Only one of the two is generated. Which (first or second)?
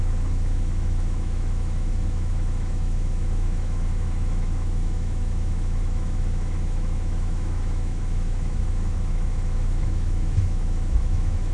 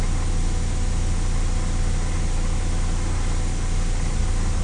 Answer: first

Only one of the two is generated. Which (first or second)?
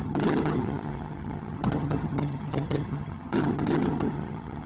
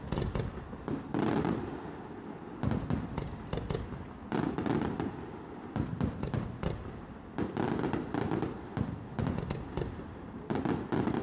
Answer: first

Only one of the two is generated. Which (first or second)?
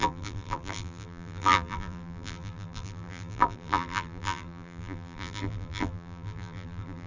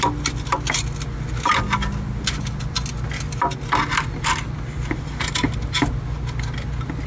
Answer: first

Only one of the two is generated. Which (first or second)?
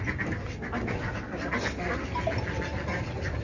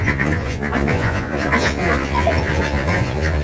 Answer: second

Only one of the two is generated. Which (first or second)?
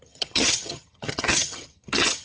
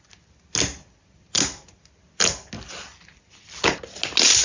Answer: first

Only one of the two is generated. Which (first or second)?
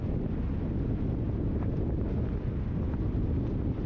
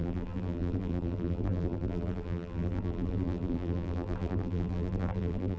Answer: second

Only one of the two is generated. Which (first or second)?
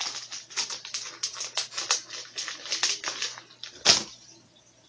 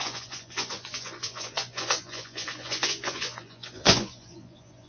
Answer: second